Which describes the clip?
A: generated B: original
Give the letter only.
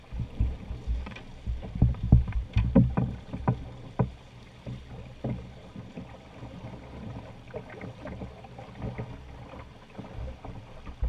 B